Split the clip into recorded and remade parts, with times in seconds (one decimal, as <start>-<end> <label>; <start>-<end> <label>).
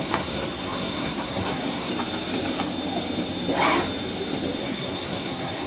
0.0-1.9 remade; 1.9-4.6 recorded; 4.6-5.7 remade